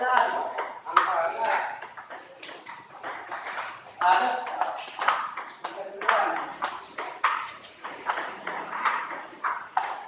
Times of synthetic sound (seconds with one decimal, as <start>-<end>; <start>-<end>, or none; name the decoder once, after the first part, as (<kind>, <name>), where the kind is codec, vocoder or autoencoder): 0.0-1.1 (vocoder, Vocos); 5.6-6.5; 7.2-10.1